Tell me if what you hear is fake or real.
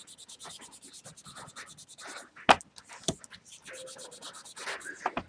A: real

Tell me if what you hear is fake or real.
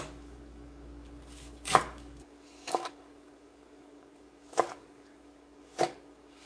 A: fake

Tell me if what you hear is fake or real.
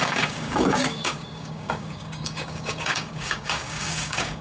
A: fake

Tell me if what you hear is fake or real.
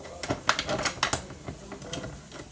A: real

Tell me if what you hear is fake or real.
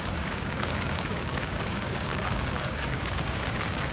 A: fake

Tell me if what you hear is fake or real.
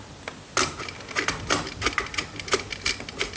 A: real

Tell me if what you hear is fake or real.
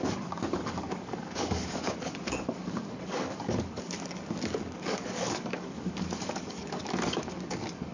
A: fake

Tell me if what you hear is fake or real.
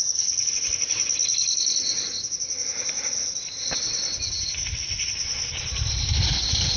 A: real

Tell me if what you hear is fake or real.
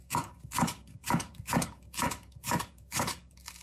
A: fake